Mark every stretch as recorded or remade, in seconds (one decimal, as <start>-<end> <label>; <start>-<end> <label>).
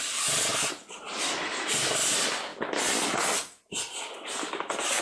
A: 0.0-5.0 recorded